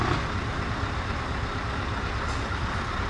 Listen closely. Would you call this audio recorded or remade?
recorded